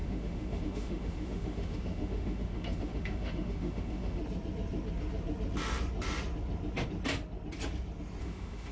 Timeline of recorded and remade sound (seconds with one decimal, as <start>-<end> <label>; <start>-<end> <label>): 0.0-4.2 remade; 4.2-8.2 recorded; 8.2-8.7 remade